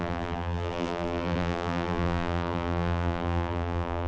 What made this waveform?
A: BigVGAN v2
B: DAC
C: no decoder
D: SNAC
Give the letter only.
A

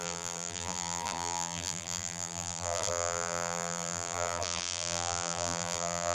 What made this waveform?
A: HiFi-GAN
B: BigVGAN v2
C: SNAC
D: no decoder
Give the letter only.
B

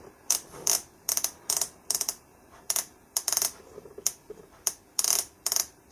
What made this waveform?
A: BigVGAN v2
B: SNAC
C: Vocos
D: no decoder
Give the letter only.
A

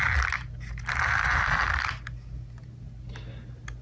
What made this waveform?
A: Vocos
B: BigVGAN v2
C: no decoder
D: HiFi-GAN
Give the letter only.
C